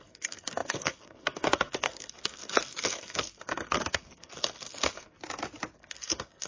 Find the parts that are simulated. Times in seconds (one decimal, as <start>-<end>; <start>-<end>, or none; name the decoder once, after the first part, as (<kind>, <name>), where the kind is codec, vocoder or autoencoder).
0.0-5.2 (codec, SNAC); 5.9-6.5

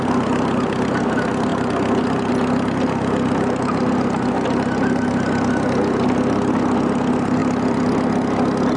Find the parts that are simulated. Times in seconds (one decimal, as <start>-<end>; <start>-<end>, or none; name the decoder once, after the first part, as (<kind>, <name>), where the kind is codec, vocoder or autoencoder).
none

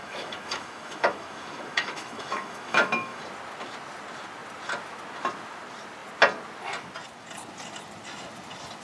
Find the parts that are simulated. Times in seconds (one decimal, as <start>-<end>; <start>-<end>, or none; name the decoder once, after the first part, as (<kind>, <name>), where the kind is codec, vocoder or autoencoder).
0.0-3.2 (autoencoder, DAC-VAE)

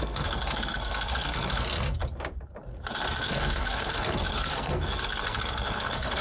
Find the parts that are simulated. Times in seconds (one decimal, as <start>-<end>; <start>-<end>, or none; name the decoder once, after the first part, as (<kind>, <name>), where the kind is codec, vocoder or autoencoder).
0.0-2.0 (codec, SNAC); 3.2-6.2